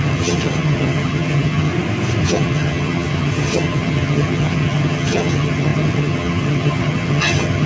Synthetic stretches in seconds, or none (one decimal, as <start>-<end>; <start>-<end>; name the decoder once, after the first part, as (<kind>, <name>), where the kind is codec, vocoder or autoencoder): 0.0-1.7 (vocoder, HiFi-GAN); 2.2-7.7